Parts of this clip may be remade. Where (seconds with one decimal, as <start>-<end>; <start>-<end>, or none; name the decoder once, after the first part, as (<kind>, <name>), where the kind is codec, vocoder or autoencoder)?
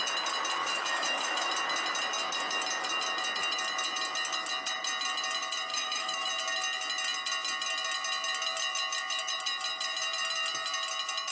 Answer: 0.6-1.5 (autoencoder, DAC-VAE); 5.7-6.3